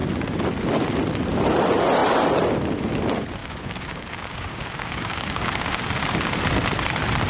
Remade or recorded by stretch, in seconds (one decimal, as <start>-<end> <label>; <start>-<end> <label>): 0.0-3.4 recorded; 3.4-5.8 remade; 5.8-7.3 recorded